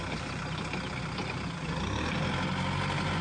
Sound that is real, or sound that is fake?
real